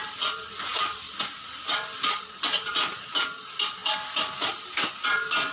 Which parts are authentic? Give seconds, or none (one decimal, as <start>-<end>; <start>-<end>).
0.0-5.5